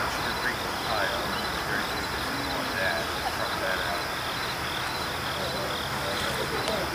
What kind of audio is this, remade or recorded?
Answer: recorded